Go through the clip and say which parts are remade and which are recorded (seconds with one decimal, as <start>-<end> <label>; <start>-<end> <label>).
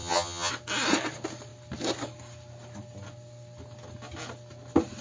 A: 0.0-0.5 remade; 0.5-5.0 recorded